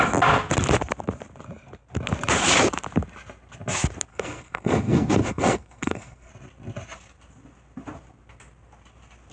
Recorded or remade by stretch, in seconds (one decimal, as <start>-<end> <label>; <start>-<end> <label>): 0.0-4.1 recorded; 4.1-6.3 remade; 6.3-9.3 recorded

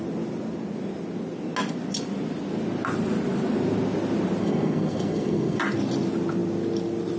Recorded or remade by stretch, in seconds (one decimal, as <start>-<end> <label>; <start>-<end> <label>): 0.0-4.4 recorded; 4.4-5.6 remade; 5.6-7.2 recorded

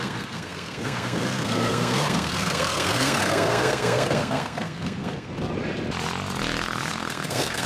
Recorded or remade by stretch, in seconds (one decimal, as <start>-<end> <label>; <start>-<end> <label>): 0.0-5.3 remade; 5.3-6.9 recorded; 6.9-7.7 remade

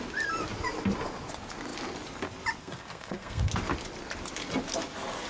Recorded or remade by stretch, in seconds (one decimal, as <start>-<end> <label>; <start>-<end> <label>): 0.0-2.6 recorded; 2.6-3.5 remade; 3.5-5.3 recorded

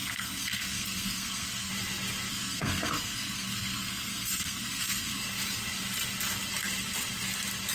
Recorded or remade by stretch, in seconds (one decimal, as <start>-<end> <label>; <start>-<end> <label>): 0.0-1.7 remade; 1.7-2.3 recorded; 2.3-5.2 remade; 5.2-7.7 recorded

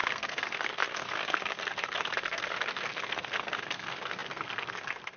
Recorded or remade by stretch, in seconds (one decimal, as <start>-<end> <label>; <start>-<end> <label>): 0.0-5.2 remade

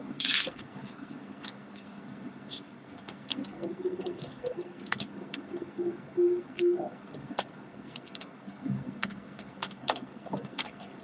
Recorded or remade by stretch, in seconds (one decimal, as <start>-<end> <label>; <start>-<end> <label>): 0.0-11.0 remade

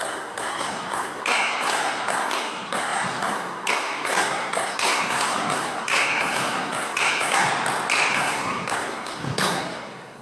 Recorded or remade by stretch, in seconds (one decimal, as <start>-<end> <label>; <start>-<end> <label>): 0.0-7.5 remade; 7.5-8.1 recorded; 8.1-10.2 remade